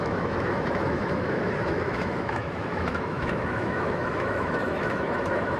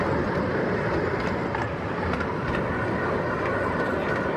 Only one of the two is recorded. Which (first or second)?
second